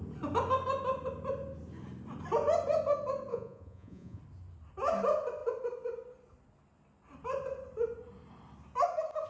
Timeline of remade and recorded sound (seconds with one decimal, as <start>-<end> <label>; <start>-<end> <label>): 0.0-3.3 recorded; 3.3-4.2 remade; 4.2-9.3 recorded